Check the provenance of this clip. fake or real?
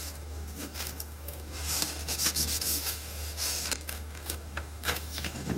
fake